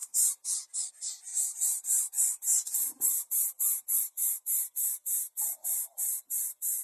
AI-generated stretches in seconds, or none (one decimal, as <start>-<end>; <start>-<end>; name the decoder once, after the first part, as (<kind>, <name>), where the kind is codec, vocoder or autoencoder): 0.9-1.3 (vocoder, BigVGAN v2); 5.4-6.8